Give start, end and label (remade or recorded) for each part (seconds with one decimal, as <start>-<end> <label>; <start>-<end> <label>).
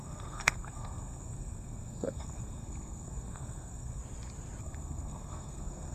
0.0-4.0 remade; 4.0-4.6 recorded; 4.6-5.9 remade